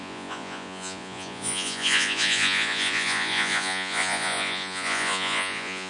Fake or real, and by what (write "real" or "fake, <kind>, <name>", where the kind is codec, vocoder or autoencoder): fake, vocoder, Vocos